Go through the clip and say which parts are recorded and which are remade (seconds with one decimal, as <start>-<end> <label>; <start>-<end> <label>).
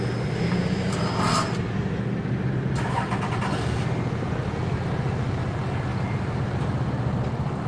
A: 0.0-7.7 recorded